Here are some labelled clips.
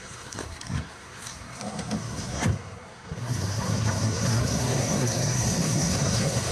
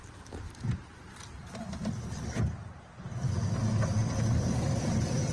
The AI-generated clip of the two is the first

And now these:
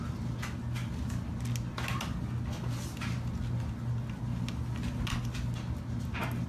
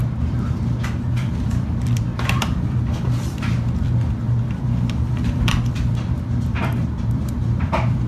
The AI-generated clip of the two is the second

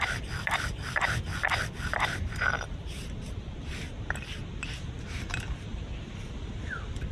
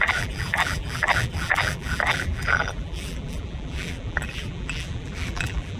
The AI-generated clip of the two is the second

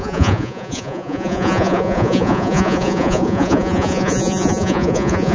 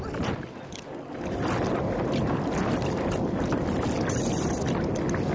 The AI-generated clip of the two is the first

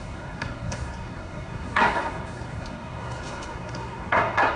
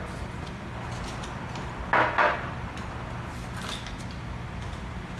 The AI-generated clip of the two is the first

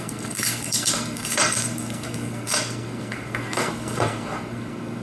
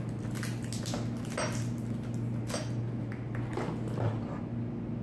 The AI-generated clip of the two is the first